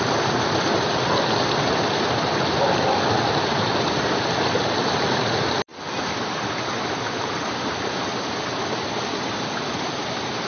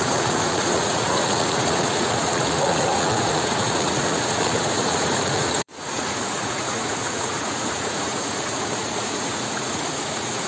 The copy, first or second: second